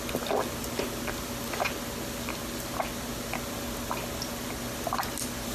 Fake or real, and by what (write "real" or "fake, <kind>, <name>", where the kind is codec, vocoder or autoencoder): real